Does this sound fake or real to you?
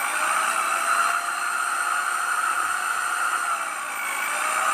real